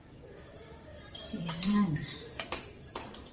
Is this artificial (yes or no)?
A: yes